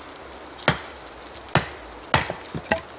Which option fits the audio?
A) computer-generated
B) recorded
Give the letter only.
B